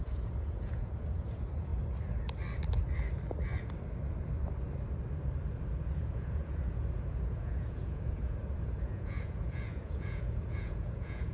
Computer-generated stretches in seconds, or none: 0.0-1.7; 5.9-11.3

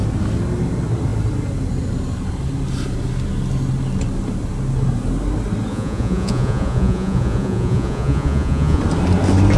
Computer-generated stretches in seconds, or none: 5.7-8.8

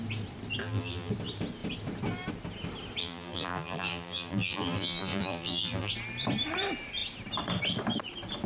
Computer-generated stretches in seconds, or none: 0.6-1.1; 3.0-5.9

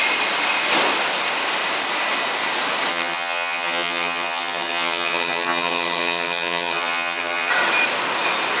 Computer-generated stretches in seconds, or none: 2.9-7.5

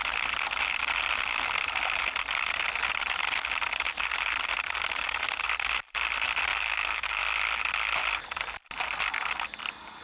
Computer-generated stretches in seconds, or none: 6.5-7.2

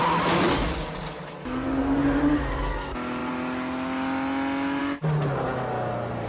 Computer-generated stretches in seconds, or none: none

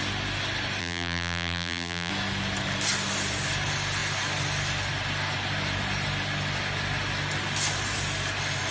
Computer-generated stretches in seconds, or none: 0.8-2.1